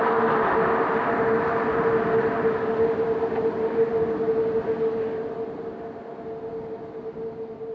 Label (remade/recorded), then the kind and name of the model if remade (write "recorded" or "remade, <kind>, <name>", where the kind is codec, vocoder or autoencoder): recorded